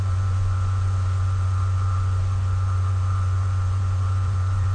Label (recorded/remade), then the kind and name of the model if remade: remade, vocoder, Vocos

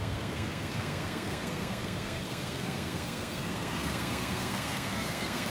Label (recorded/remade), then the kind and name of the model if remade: remade, codec, SNAC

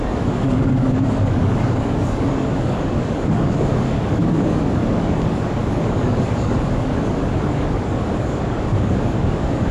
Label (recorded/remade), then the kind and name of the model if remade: remade, codec, DAC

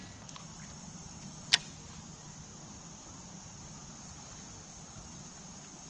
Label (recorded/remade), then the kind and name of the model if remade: recorded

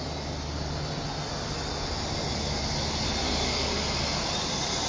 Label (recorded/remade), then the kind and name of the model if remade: recorded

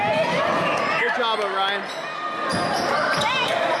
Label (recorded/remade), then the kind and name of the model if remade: recorded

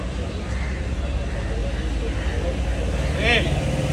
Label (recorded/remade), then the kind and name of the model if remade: recorded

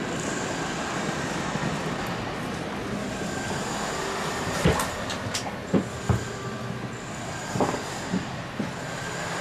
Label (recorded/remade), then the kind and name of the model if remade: recorded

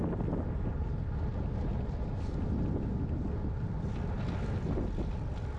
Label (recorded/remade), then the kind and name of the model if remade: recorded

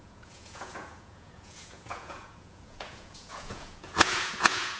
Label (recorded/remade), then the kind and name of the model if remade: remade, vocoder, Vocos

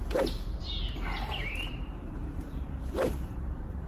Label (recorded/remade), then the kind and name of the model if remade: remade, vocoder, BigVGAN v2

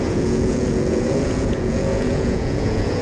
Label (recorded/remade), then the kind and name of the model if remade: remade, vocoder, Vocos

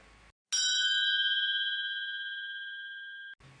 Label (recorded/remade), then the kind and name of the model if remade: recorded